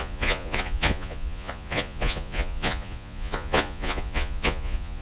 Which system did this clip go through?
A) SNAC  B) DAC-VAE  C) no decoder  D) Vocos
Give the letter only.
D